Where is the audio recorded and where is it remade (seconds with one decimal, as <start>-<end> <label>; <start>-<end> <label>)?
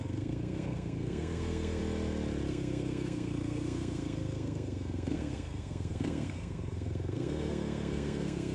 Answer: 0.0-1.8 remade; 1.8-2.5 recorded; 2.5-8.5 remade